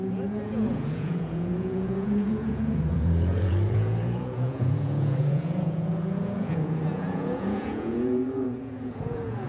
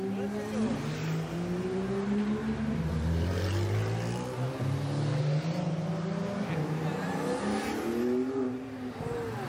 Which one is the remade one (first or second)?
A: first